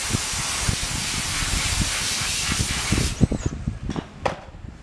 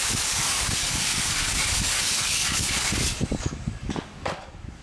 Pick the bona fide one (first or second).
first